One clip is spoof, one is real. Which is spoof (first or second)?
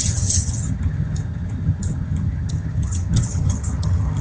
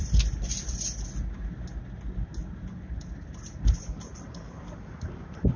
first